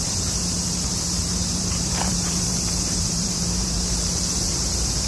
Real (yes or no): no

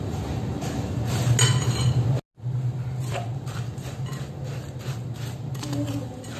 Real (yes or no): yes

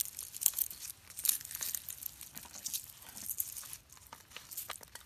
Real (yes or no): yes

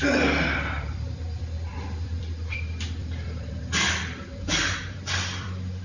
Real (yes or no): no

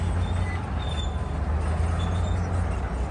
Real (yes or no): yes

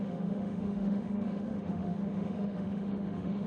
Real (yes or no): no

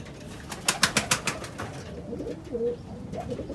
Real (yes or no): yes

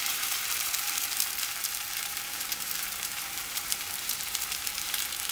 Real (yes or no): no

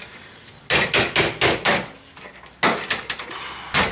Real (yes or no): yes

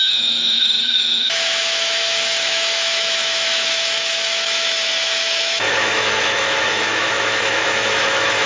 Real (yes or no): no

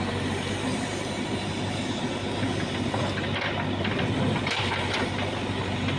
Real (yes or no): yes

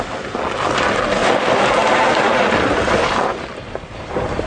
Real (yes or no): yes